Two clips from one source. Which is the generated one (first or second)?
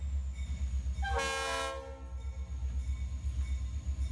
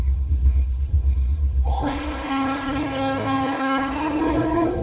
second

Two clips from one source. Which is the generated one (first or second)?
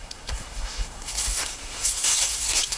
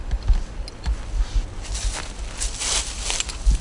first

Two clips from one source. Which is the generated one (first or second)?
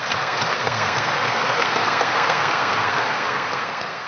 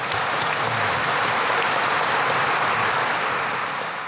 first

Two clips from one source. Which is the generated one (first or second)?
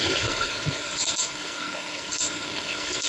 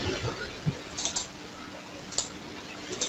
first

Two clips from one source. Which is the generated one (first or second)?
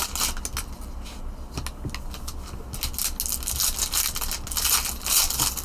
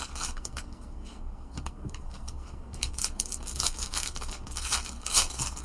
second